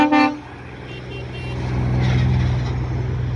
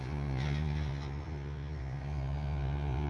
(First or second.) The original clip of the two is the first